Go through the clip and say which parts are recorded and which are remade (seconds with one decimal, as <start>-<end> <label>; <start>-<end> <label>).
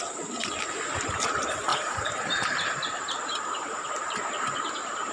0.0-1.7 recorded; 1.7-5.1 remade